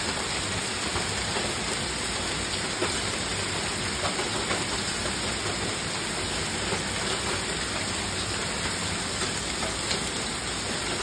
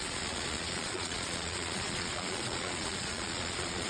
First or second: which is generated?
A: second